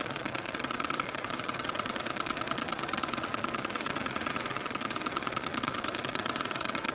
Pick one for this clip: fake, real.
fake